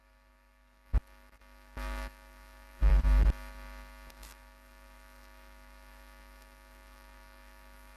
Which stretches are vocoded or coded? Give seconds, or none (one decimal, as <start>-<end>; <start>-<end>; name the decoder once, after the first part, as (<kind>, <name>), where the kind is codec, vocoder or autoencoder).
0.0-2.9 (codec, DAC); 4.1-8.0